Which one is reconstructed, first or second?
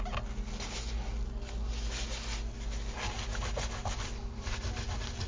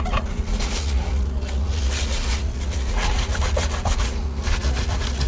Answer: second